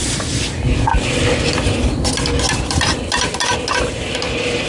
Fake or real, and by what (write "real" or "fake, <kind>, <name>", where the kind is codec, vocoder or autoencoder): real